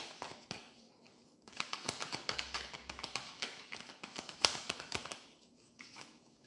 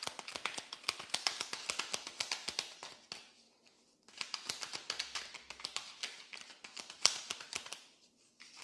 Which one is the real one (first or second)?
second